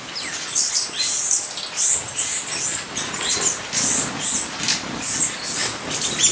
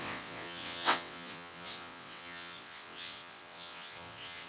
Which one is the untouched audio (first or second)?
first